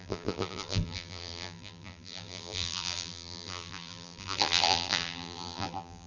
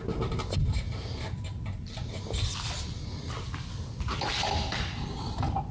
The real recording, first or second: second